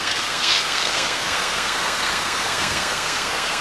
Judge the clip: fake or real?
fake